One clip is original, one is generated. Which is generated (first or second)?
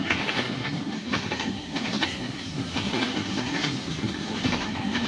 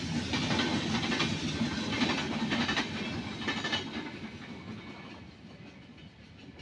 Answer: first